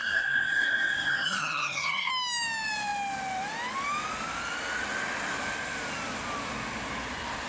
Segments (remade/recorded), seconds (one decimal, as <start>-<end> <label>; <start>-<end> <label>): 0.0-2.1 remade; 2.1-7.5 recorded